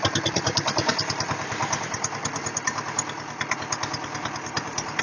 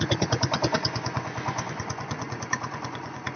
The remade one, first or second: second